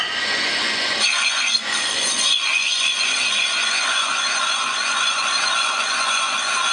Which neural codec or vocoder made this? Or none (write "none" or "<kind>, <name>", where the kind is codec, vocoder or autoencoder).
vocoder, Vocos